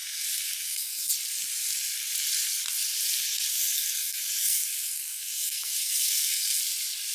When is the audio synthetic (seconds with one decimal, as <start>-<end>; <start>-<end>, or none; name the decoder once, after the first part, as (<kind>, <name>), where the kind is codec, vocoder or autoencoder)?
0.0-1.1 (codec, SNAC); 3.5-6.6